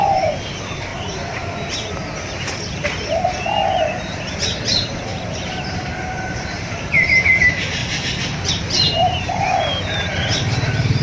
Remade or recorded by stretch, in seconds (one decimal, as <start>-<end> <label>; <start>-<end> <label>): 0.0-0.9 remade; 0.9-4.2 recorded; 4.2-7.8 remade; 7.8-8.5 recorded; 8.5-11.0 remade